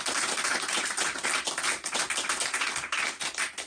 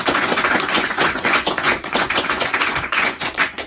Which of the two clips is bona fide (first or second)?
first